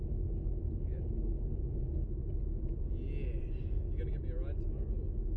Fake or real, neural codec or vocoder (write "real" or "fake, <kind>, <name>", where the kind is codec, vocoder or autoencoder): real